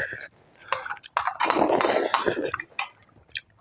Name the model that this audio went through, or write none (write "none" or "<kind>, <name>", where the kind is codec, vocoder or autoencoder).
none